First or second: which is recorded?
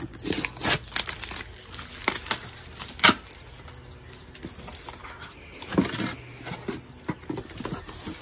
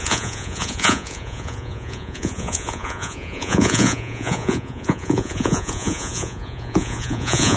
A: first